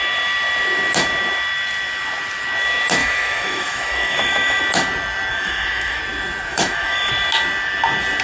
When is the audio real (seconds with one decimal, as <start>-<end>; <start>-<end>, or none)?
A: 0.0-3.0; 4.6-5.3; 6.0-6.5; 7.1-8.2

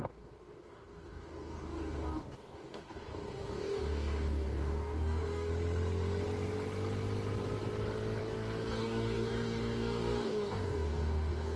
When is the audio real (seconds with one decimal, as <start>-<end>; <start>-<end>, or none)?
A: 5.5-8.2

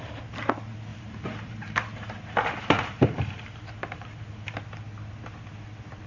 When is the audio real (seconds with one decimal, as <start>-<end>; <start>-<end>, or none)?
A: 0.0-0.9; 4.6-6.1

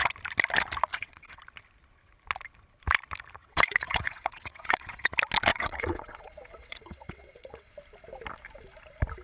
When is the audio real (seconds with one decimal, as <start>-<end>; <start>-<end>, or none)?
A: 0.0-0.9; 1.4-3.4; 5.1-5.5; 7.7-9.2

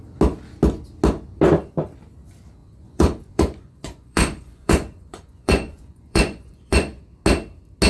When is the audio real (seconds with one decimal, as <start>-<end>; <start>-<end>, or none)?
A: 0.0-2.6; 7.0-7.9